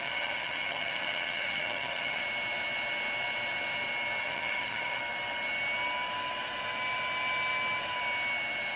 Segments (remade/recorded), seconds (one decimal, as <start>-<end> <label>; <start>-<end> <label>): 0.0-2.2 remade; 2.2-4.2 recorded; 4.2-5.0 remade; 5.0-8.8 recorded